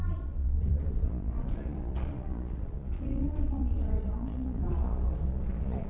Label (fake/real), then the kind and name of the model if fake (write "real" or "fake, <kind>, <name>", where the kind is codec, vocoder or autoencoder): fake, vocoder, Vocos